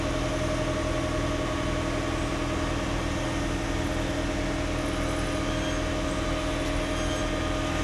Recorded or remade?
recorded